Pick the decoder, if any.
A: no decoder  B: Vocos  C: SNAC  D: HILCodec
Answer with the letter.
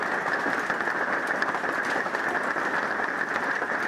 A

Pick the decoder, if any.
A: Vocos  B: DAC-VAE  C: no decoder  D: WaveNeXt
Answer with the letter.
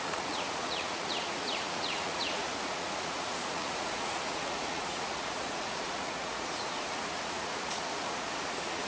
A